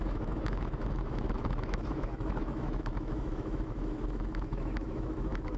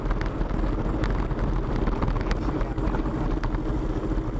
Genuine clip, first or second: second